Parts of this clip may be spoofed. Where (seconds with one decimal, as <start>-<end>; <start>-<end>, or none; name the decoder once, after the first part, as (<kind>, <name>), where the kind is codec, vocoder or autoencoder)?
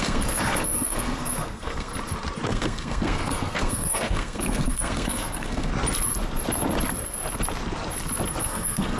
0.0-1.9 (codec, SNAC); 2.5-5.7; 8.4-9.0